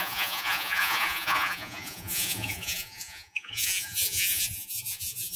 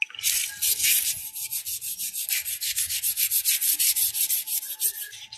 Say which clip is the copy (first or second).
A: first